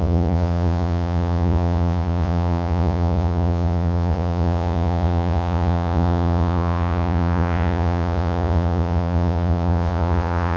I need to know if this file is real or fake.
fake